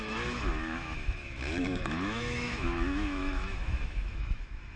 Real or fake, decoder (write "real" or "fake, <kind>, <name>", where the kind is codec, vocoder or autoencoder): fake, autoencoder, DAC-VAE